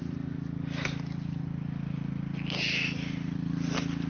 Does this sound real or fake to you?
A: real